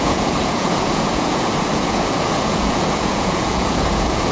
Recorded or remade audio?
remade